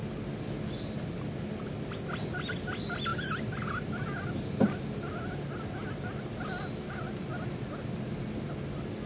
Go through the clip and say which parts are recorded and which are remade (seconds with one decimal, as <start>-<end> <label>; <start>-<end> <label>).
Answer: 0.0-9.1 recorded